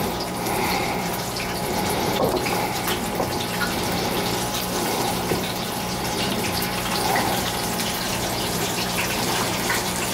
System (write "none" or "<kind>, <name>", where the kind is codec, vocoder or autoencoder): vocoder, BigVGAN v2